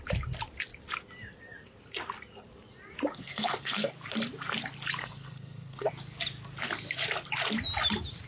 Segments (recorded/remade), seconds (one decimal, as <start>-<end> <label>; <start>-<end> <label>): 0.0-3.1 recorded; 3.1-3.9 remade; 3.9-5.0 recorded; 5.0-5.9 remade; 5.9-8.3 recorded